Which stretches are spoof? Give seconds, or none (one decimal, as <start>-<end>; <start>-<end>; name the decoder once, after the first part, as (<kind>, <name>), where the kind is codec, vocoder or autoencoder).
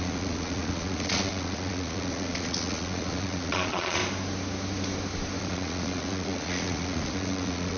0.0-4.0 (vocoder, Vocos); 5.4-7.8